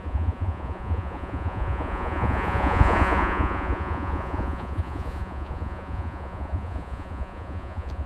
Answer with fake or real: fake